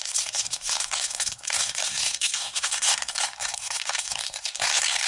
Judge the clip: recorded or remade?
remade